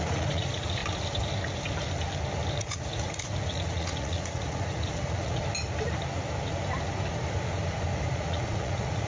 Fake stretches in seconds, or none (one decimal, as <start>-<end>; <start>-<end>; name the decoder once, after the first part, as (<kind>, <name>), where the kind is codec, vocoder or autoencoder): 0.0-0.8 (vocoder, Vocos); 2.5-5.4; 8.1-9.1

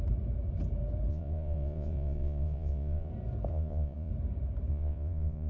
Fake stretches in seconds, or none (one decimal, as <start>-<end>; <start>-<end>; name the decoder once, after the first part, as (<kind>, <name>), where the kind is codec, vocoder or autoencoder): 1.1-3.1 (vocoder, Vocos); 3.5-4.1; 4.7-5.5

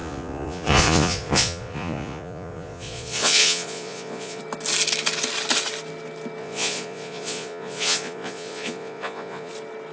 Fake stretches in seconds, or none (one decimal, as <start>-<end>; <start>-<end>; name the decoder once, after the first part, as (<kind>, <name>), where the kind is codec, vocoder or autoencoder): 0.0-4.4 (vocoder, Vocos); 6.4-9.5

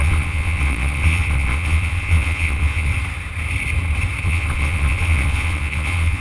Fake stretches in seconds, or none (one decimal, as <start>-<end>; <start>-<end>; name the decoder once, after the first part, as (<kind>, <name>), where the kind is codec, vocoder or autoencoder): 0.0-2.9 (vocoder, Vocos); 4.2-6.2

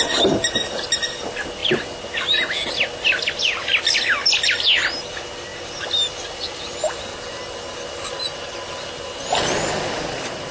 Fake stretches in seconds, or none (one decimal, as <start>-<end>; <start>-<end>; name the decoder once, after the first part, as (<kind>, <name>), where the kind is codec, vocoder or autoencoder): none

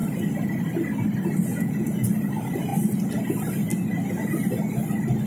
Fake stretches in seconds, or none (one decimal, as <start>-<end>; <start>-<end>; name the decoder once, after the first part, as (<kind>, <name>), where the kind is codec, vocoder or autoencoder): 1.5-2.1 (vocoder, Vocos)